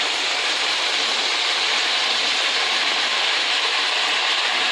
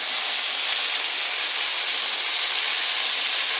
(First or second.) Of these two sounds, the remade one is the first